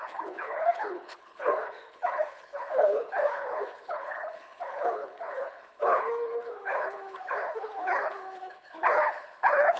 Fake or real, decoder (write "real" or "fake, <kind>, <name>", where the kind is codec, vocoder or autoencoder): fake, codec, HILCodec